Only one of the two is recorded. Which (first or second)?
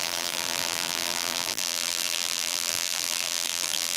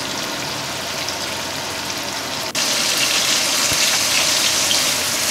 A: second